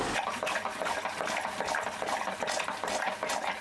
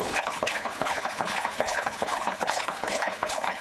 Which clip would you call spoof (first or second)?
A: second